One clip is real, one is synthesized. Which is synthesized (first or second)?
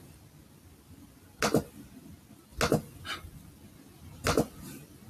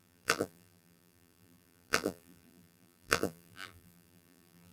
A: second